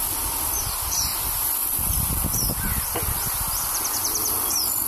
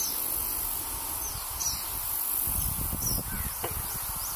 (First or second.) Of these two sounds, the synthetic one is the first